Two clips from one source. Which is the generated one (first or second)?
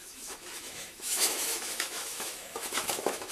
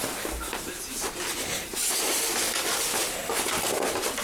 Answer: first